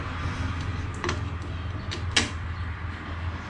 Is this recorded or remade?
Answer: recorded